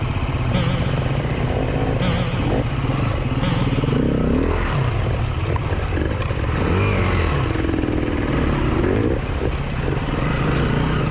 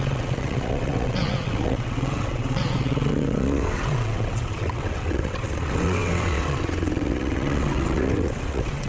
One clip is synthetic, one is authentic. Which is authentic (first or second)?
first